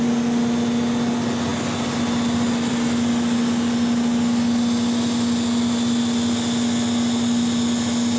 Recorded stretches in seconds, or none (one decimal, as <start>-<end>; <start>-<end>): 0.0-8.2